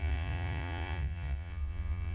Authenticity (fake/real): fake